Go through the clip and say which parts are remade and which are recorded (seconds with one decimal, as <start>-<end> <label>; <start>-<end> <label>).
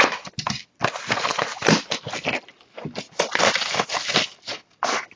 0.0-5.2 recorded